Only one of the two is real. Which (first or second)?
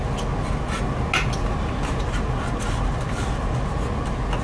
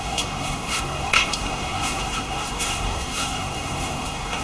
first